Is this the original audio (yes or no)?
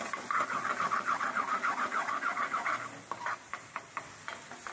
yes